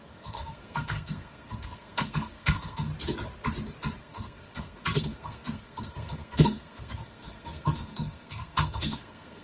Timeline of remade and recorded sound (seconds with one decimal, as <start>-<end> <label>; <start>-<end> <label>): 0.0-2.9 remade; 2.9-4.0 recorded; 4.0-9.4 remade